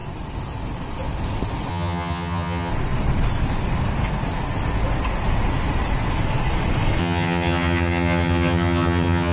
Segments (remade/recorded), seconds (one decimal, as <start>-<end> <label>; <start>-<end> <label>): 0.0-1.7 recorded; 1.7-2.7 remade; 2.7-7.0 recorded; 7.0-9.3 remade